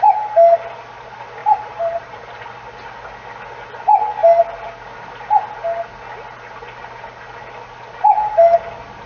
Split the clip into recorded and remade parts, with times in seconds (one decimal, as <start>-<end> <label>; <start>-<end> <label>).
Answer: 0.0-1.4 recorded; 1.4-2.2 remade; 2.2-9.1 recorded